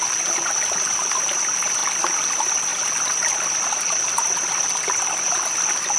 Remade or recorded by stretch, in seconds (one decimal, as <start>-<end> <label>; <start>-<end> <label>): 0.0-1.8 recorded; 1.8-2.3 remade; 2.3-6.0 recorded